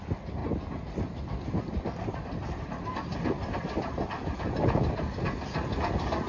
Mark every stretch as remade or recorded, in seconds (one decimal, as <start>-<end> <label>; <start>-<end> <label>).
0.0-6.3 recorded